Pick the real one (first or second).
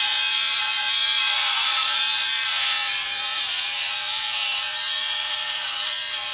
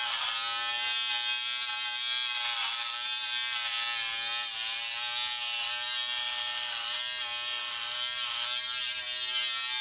second